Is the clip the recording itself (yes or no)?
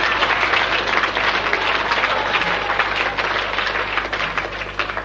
yes